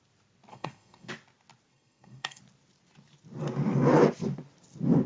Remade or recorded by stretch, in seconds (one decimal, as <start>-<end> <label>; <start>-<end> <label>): 0.0-0.5 recorded; 0.5-1.1 remade; 1.1-1.7 recorded; 1.7-2.4 remade; 2.4-5.1 recorded